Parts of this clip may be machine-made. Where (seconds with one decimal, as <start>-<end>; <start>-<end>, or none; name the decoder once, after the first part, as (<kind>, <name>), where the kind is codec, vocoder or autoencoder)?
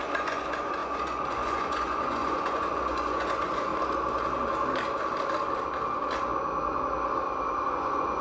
0.0-3.7 (vocoder, Vocos); 7.7-8.2